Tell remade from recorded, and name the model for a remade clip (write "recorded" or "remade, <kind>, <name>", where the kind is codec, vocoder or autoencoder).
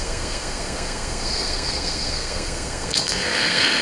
remade, codec, SNAC